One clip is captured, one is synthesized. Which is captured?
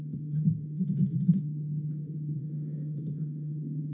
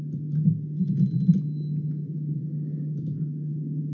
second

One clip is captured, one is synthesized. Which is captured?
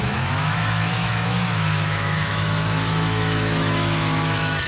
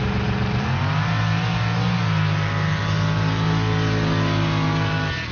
second